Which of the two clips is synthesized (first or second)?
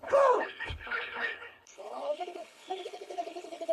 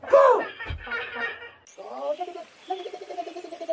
first